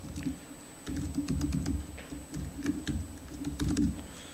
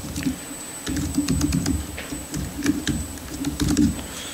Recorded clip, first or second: first